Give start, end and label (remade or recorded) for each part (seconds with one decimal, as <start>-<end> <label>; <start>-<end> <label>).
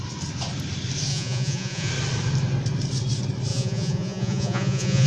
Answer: 0.0-1.1 recorded; 1.1-1.9 remade; 1.9-3.5 recorded; 3.5-5.1 remade